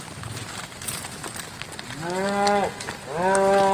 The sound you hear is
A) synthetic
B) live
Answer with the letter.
B